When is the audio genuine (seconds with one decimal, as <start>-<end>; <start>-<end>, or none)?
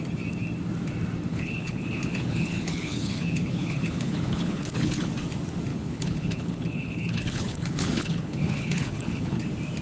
0.0-1.3; 5.1-5.7; 9.4-9.8